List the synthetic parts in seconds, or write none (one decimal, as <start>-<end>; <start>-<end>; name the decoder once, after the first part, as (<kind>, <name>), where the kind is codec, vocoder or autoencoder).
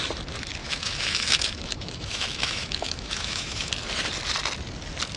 0.6-3.7 (autoencoder, DAC-VAE)